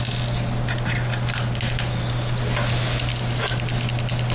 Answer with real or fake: real